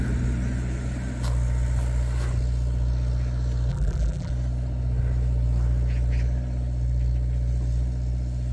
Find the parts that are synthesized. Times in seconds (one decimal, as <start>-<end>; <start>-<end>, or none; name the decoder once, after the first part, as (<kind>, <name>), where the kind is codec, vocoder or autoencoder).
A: 3.7-4.3 (vocoder, BigVGAN v2)